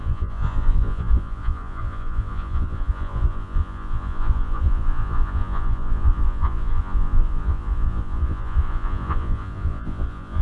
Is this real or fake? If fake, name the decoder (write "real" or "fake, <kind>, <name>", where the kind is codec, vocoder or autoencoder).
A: fake, vocoder, Vocos